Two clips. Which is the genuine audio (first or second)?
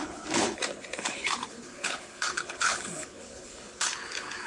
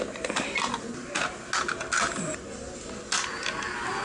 second